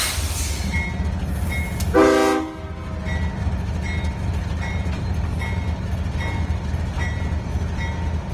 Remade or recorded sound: recorded